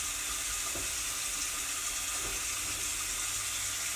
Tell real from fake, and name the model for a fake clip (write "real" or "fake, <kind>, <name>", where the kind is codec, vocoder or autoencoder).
real